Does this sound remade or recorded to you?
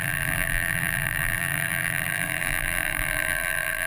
remade